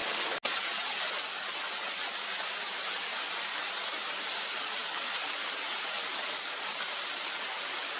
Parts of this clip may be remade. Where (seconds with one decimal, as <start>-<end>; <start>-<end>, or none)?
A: none